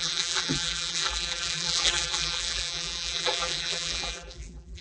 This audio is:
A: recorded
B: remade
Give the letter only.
B